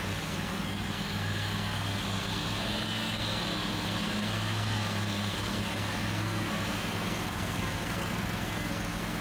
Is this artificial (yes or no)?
yes